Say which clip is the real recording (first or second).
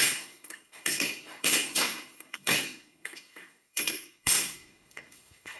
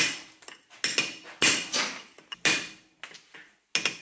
second